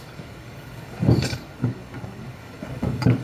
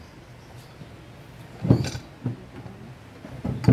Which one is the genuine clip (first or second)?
second